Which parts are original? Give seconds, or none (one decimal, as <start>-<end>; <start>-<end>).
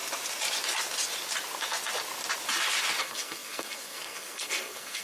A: 0.0-3.0